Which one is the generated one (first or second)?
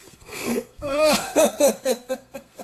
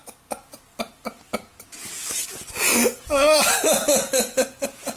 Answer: first